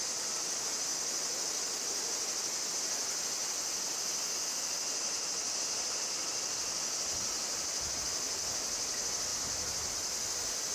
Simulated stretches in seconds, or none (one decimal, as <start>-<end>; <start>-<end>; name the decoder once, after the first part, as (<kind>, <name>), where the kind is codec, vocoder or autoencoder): none